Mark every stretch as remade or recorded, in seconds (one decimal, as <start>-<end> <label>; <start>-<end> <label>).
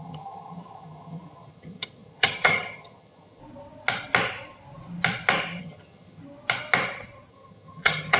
0.0-3.4 remade; 3.4-5.6 recorded; 5.6-6.2 remade; 6.2-7.3 recorded; 7.3-8.2 remade